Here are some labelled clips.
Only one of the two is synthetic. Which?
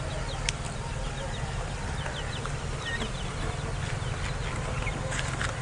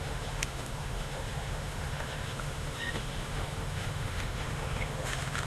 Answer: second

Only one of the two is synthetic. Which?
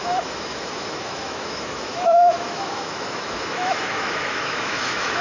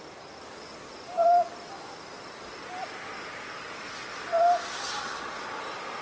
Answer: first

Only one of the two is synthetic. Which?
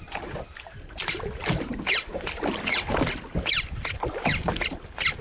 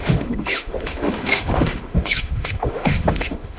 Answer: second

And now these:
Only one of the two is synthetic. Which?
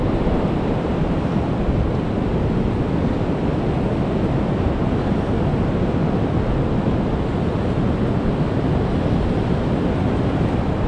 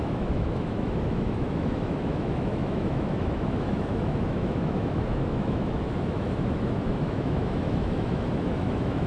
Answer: second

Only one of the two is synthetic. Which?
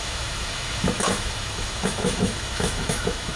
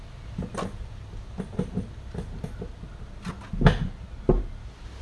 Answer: first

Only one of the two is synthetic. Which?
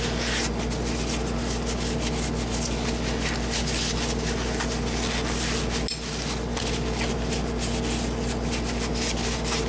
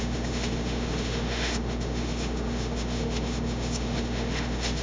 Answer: second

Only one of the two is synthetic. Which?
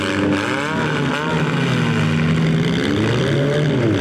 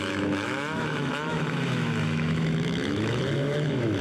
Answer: second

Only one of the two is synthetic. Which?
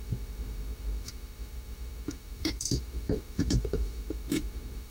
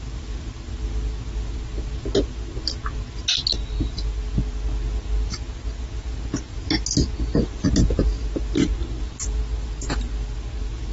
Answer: first